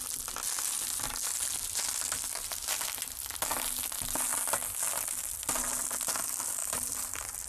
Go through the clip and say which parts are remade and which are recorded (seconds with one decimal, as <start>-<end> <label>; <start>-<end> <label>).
0.0-6.6 recorded; 6.6-7.5 remade